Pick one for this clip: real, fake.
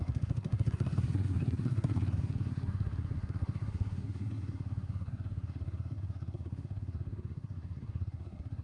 fake